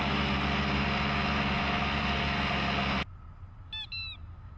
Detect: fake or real real